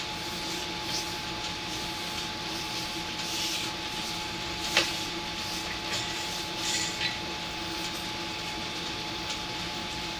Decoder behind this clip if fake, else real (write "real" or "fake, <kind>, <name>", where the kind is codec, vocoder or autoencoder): real